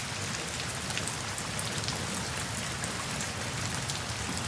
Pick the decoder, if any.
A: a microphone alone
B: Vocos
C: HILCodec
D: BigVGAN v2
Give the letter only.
A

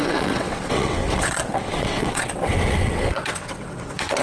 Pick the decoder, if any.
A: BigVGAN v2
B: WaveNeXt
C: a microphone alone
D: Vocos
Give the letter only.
B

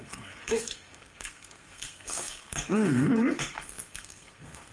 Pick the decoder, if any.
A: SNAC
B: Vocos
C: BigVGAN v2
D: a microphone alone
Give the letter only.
A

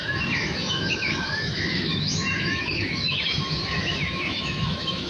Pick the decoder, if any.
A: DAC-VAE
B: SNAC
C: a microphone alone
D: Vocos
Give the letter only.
A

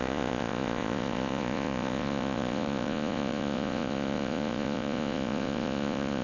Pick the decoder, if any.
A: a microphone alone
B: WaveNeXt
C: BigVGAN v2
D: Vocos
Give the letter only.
D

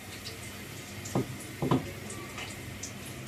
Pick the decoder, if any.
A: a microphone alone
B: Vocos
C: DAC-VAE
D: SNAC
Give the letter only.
A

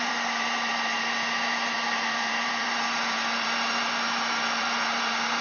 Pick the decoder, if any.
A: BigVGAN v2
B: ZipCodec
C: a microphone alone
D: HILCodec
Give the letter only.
A